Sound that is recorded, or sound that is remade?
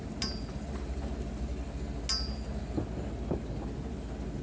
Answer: recorded